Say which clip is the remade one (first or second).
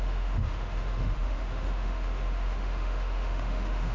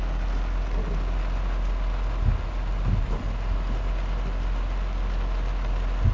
first